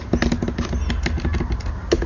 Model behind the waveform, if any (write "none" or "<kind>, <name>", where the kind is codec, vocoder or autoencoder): none